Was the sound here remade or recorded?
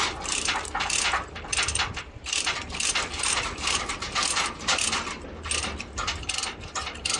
remade